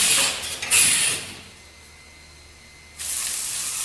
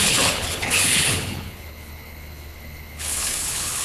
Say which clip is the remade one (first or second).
second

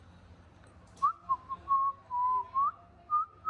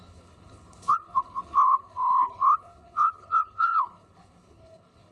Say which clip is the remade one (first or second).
second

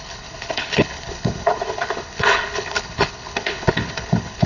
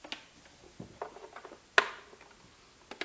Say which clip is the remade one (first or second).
first